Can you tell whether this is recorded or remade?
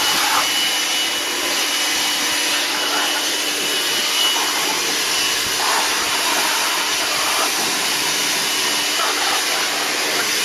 recorded